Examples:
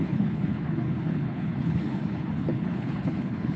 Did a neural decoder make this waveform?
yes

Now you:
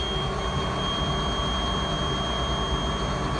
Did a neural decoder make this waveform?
no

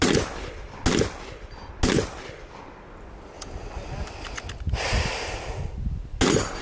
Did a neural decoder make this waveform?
no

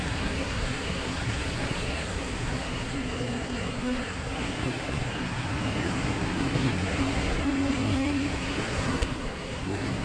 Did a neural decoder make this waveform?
yes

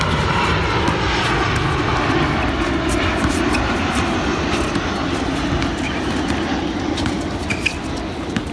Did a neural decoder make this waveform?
no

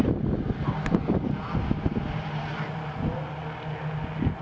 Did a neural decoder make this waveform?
no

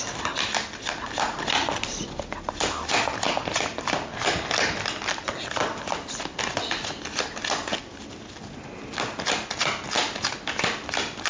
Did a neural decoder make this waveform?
no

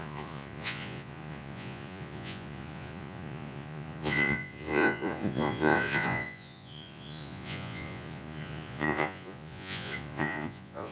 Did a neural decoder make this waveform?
yes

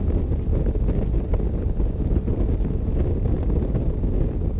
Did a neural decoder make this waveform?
no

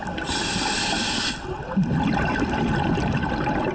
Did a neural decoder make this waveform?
no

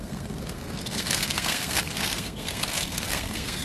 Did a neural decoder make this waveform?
yes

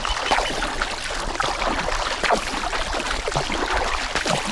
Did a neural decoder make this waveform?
no